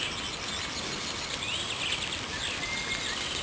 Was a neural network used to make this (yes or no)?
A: no